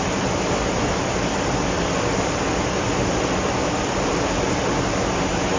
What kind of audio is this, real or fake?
real